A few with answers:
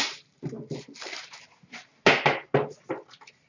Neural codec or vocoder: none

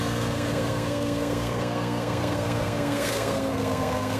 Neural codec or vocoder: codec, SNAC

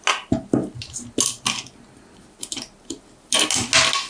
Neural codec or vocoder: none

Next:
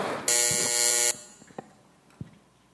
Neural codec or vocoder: none